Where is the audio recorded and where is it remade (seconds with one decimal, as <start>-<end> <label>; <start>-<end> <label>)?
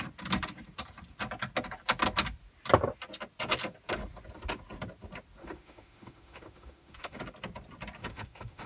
0.0-5.4 recorded; 5.4-7.2 remade; 7.2-8.0 recorded; 8.0-8.7 remade